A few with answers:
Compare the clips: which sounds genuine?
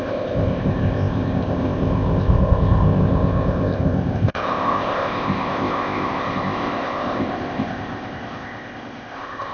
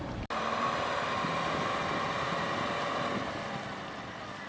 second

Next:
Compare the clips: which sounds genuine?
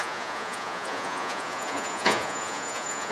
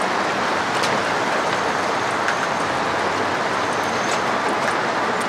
second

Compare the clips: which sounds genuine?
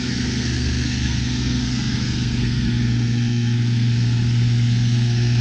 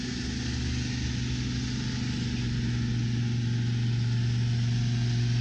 second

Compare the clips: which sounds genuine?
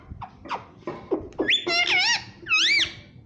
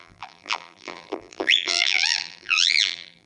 first